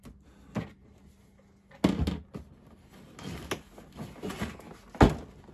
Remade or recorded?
recorded